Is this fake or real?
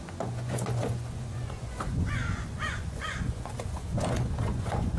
fake